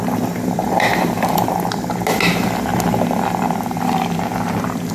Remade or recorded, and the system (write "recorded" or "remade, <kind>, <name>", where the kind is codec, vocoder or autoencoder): remade, vocoder, BigVGAN v2